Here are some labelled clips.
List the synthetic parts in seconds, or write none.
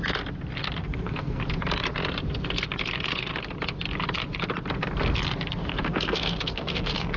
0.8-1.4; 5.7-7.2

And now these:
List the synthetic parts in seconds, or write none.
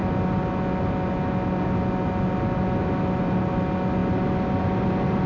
none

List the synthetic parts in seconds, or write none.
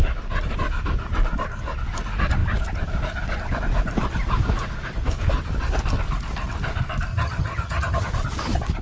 7.1-8.1